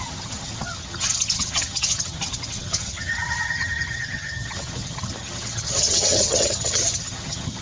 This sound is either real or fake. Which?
fake